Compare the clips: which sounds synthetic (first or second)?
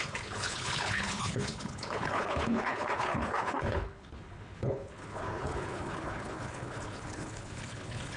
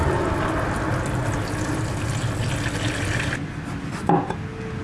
first